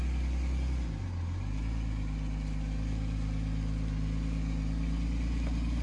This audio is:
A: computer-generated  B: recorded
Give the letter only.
B